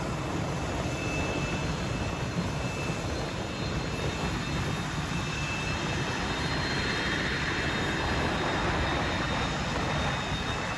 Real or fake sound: real